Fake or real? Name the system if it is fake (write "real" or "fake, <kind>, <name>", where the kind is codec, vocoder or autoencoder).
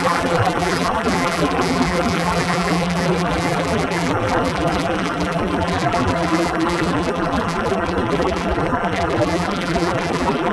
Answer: fake, vocoder, BigVGAN v2